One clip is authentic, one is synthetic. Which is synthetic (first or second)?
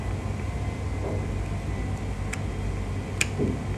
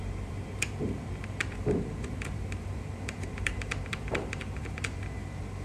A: second